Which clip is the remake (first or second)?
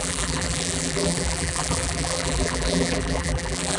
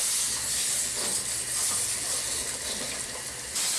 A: first